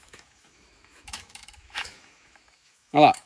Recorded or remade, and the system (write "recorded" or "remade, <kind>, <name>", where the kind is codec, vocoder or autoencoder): remade, autoencoder, DAC-VAE